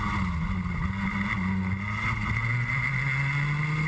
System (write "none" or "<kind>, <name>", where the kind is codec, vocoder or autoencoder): none